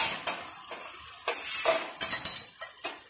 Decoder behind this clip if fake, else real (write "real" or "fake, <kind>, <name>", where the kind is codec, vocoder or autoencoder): real